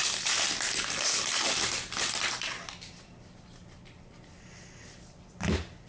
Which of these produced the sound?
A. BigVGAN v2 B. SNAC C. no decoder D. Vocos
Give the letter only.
C